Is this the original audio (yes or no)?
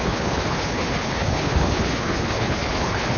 no